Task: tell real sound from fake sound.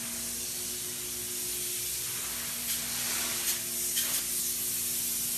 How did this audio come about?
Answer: real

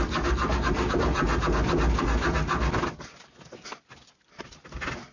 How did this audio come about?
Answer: real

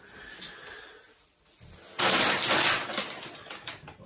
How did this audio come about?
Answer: real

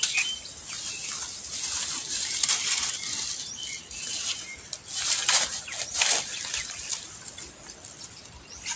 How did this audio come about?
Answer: real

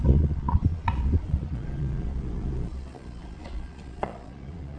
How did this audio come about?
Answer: fake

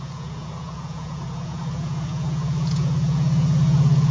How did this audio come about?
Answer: fake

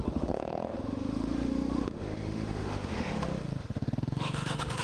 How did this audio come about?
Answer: fake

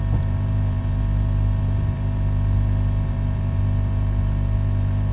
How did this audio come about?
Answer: fake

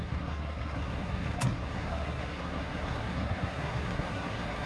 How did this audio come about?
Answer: fake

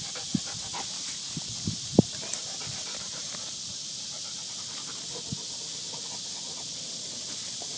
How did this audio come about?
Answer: real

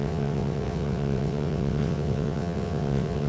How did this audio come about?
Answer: fake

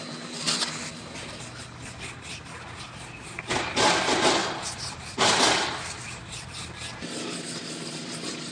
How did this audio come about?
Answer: real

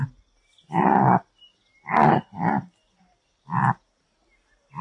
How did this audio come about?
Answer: real